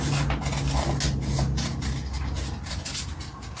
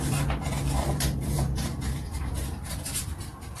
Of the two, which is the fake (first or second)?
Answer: second